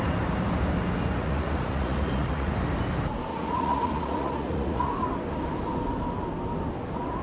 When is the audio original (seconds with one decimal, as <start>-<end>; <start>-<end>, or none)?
0.0-1.2; 2.5-3.3; 4.9-7.2